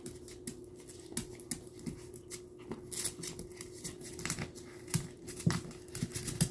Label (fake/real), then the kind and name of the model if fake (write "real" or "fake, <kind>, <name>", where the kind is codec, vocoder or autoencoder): real